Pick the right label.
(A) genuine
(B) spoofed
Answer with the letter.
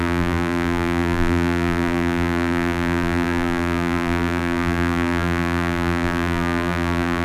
B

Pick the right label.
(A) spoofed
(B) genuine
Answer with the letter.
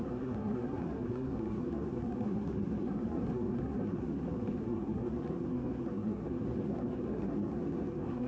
A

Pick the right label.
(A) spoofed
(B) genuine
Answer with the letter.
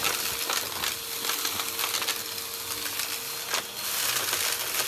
B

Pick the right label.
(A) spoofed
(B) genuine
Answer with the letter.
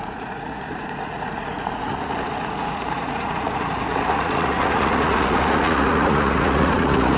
A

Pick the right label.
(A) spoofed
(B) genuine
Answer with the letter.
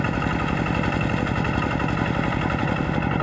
B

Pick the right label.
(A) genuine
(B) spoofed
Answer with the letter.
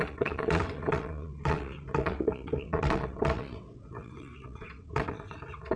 B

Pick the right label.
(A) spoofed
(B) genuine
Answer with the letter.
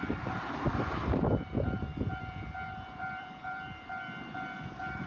A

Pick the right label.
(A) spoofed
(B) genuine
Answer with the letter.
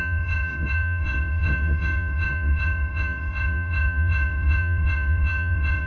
A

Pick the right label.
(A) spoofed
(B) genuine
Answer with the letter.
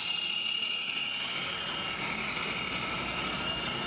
B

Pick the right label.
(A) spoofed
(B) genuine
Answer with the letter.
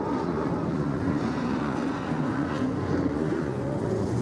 A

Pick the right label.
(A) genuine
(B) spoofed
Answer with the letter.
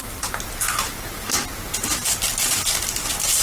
A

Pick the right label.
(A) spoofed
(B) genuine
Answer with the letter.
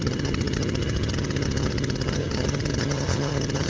A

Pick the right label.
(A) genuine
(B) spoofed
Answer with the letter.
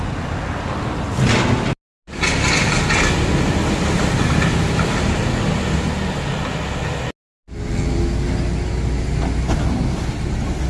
A